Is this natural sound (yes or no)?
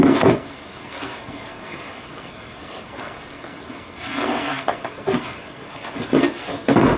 no